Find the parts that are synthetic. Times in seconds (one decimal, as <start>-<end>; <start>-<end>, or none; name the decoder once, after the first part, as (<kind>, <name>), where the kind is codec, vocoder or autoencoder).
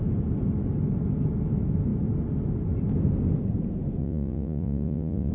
4.0-5.3 (vocoder, Vocos)